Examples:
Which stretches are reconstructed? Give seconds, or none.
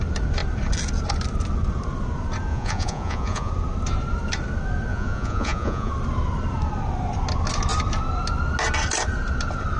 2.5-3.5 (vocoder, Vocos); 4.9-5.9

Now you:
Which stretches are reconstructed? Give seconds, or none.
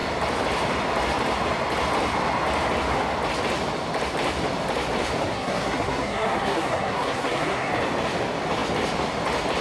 5.2-7.7 (codec, SNAC)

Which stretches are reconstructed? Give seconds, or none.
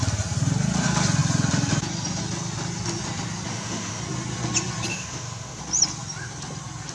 3.5-4.0 (autoencoder, DAC-VAE); 4.9-5.6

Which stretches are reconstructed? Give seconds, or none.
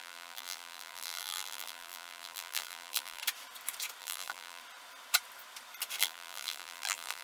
0.0-3.2 (vocoder, BigVGAN v2); 4.0-4.6; 6.0-7.2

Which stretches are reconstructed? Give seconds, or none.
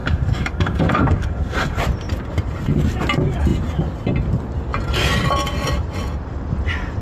0.0-1.8 (codec, DAC)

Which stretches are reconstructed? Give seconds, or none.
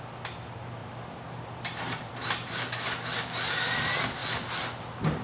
0.8-2.5 (vocoder, BigVGAN v2)